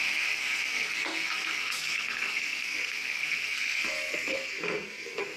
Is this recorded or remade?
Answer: remade